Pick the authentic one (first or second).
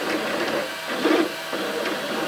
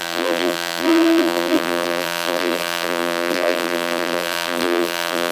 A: first